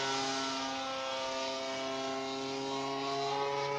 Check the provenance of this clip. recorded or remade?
recorded